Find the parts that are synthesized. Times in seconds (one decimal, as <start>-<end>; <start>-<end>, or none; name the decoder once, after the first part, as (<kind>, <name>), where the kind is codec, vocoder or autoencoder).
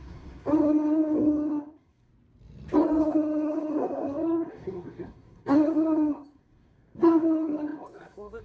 0.0-2.1 (codec, SNAC); 3.0-8.4